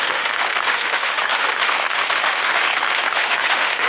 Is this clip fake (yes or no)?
yes